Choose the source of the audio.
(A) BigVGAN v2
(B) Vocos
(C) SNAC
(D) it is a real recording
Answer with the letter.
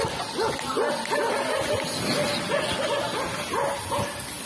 D